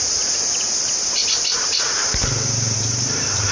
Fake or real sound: real